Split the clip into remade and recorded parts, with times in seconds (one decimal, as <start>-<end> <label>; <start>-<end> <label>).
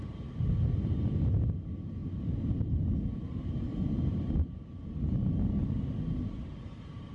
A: 0.0-7.1 recorded